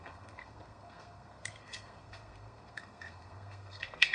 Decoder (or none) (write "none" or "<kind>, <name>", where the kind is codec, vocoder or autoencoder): codec, SNAC